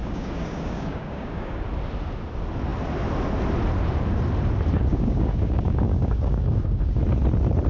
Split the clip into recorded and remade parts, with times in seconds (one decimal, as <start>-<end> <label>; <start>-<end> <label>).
0.0-1.6 remade; 1.6-4.9 recorded; 4.9-7.0 remade; 7.0-7.7 recorded